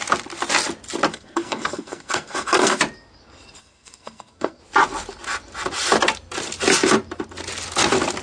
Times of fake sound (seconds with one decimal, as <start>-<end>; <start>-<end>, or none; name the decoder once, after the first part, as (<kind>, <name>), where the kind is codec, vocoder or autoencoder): 1.1-2.8 (codec, SNAC); 3.6-4.6